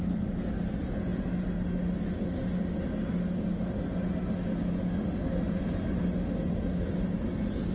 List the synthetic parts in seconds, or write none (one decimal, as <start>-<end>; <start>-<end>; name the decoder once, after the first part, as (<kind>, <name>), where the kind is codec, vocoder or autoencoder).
none